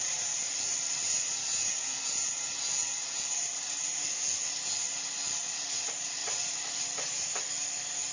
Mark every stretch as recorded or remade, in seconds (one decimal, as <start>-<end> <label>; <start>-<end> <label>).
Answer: 0.0-6.2 recorded; 6.2-6.7 remade; 6.7-8.1 recorded